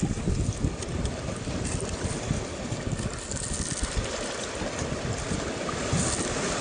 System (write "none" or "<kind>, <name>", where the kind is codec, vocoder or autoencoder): none